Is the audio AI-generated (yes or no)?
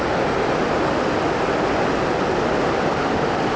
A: no